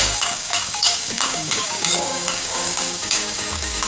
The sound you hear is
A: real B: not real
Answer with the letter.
B